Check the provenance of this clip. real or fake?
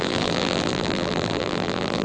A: fake